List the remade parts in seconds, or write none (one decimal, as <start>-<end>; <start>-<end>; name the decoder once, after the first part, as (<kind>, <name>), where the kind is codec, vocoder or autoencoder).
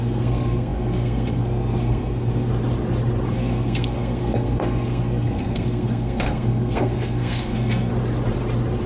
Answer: 0.0-2.5 (codec, SNAC); 3.3-7.9